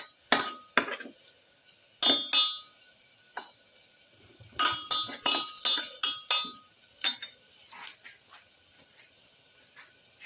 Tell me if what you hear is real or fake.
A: real